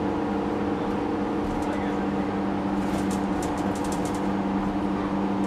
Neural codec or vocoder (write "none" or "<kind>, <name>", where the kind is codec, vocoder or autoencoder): none